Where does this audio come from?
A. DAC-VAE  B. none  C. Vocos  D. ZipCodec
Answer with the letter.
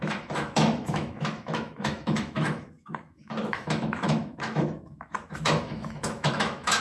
A